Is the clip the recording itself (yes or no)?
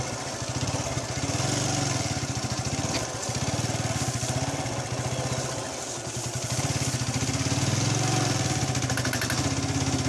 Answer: yes